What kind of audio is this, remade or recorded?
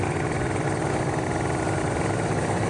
recorded